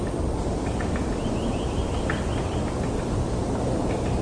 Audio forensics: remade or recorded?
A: recorded